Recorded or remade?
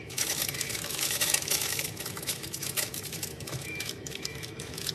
remade